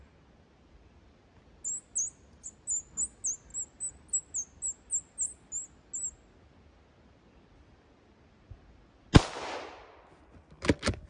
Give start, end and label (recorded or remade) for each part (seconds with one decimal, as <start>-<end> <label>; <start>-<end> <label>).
0.0-11.1 recorded